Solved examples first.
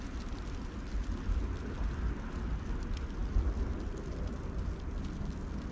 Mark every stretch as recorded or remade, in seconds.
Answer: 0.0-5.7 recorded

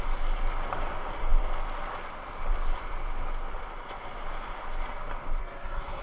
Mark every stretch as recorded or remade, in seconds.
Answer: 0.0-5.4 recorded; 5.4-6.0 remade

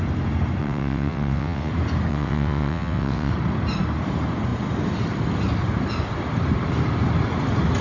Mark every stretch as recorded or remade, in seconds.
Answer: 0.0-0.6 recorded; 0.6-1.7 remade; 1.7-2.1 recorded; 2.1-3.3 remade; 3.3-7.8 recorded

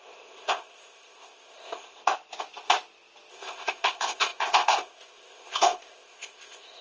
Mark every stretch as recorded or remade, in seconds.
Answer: 0.0-2.0 remade; 2.0-3.3 recorded; 3.3-6.8 remade

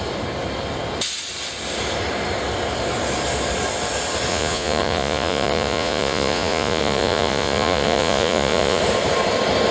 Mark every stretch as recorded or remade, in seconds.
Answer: 0.0-4.3 recorded; 4.3-8.8 remade; 8.8-9.7 recorded

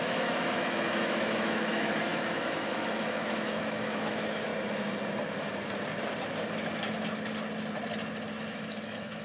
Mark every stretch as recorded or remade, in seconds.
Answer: 0.0-4.5 remade; 4.5-8.4 recorded; 8.4-9.2 remade

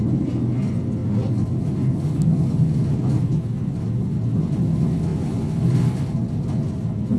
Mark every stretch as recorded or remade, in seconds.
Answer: 0.0-5.1 recorded; 5.1-6.0 remade; 6.0-7.2 recorded

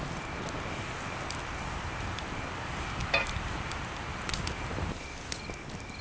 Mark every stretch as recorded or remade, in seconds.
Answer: 0.0-6.0 recorded